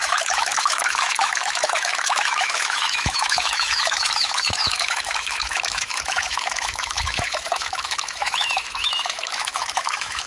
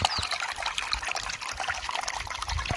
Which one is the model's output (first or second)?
first